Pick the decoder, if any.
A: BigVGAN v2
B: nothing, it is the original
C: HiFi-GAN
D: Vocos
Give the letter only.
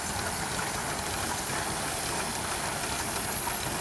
B